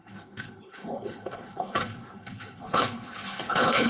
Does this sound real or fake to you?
fake